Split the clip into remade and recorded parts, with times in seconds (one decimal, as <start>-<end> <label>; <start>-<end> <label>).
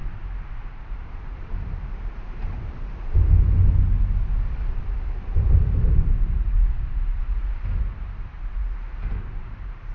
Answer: 0.0-0.7 recorded; 0.7-3.6 remade; 3.6-4.6 recorded; 4.6-9.9 remade